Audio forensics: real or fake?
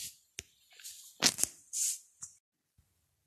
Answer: real